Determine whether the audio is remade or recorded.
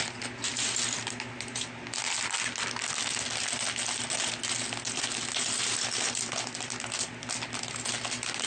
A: recorded